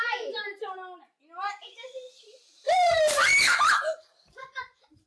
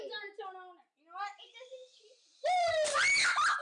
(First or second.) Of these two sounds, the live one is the second